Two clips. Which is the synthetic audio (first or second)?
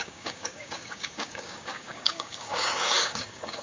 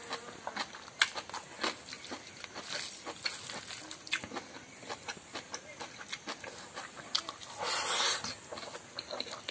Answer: first